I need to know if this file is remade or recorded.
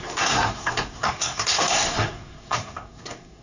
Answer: remade